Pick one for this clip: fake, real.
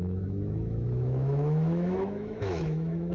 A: fake